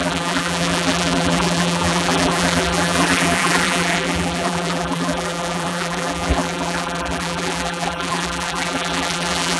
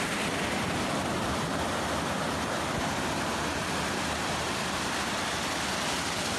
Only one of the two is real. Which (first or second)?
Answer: second